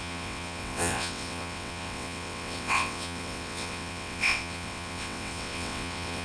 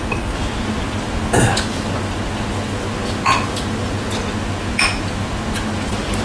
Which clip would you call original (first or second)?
second